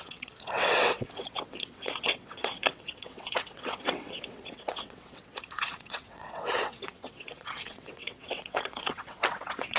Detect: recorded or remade remade